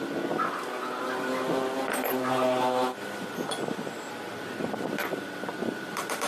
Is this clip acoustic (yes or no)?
yes